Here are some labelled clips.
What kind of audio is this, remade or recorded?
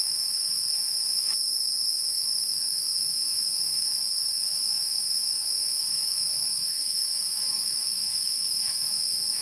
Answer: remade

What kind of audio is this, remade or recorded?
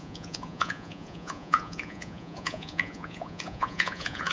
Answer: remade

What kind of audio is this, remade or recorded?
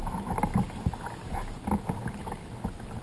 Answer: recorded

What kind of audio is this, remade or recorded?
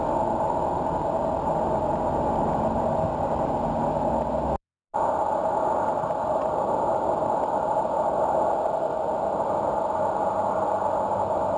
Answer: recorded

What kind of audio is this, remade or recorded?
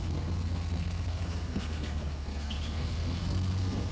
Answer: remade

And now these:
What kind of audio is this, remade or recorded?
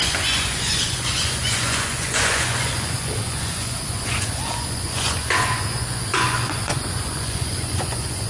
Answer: remade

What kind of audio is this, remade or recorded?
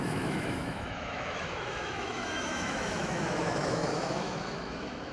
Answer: remade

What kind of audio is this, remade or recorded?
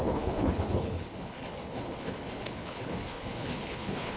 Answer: remade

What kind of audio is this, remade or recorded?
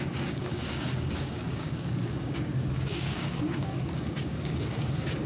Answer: remade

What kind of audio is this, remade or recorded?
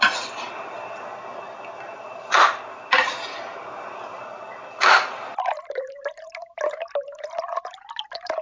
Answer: recorded